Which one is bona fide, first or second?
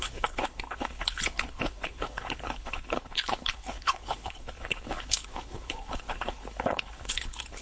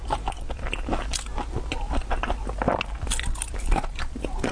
second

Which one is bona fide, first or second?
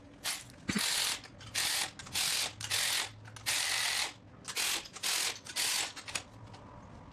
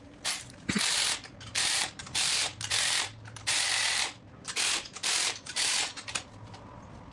first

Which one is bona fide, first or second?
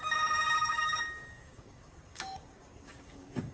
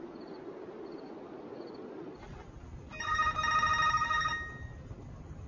second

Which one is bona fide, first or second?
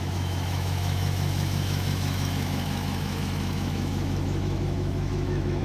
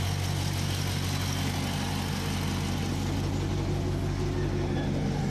second